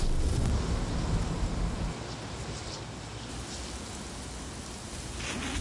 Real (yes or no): yes